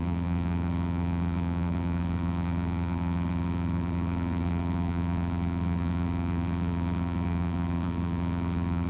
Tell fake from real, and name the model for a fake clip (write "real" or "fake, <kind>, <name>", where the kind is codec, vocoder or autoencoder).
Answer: fake, vocoder, BigVGAN v2